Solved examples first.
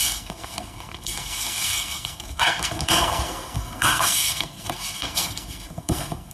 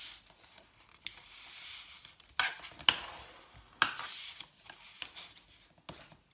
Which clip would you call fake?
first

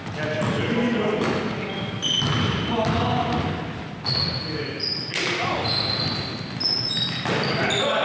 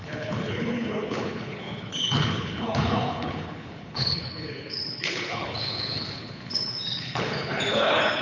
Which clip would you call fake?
second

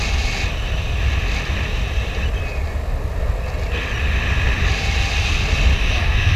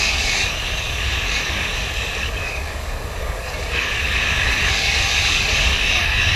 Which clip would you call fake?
second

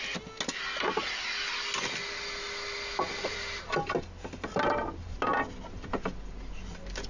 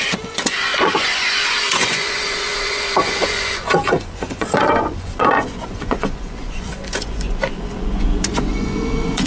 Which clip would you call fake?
second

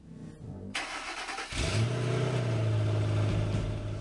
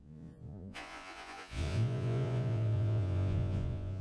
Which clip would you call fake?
second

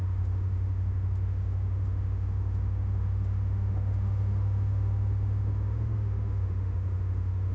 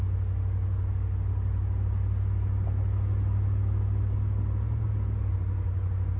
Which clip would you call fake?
first